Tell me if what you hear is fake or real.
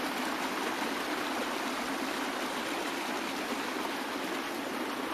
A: real